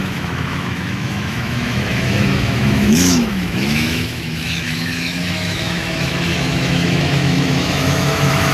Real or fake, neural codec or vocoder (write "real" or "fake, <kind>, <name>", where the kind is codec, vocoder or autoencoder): fake, autoencoder, DAC-VAE